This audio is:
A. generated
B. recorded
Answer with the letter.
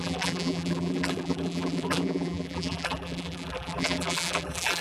A